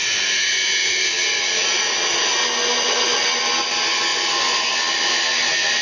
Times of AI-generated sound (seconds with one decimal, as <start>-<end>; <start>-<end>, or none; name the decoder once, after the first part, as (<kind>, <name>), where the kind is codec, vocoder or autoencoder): 4.1-4.7 (vocoder, Vocos)